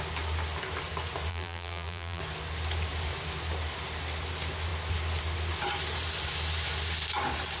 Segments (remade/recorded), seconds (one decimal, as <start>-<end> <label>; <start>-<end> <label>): 0.0-1.3 recorded; 1.3-2.2 remade; 2.2-7.6 recorded